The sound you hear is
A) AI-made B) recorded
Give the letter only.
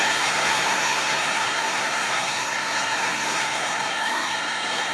A